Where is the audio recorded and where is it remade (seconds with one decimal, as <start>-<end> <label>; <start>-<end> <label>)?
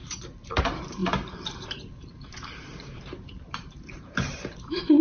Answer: 0.0-5.0 remade